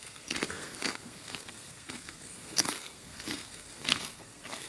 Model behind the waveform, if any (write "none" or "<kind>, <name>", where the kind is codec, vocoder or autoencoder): codec, SNAC